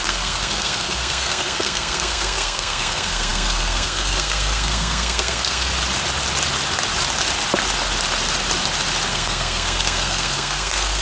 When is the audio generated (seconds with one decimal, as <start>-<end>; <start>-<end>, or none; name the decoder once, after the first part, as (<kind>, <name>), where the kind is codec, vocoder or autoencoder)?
0.0-5.7 (codec, SNAC); 9.1-11.0